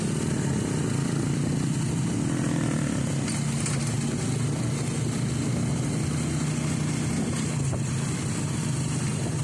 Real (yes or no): yes